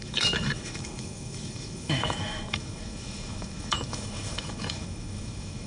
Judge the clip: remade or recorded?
remade